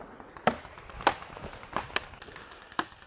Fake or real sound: real